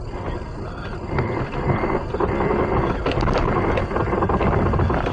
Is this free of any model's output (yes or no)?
yes